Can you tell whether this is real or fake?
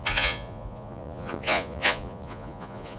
fake